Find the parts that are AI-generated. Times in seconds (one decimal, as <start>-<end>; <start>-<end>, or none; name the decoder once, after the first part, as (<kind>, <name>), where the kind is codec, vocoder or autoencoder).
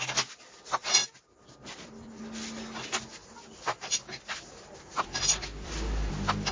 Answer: 1.0-2.2 (vocoder, BigVGAN v2); 3.2-6.1